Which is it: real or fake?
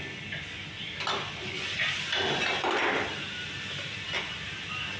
real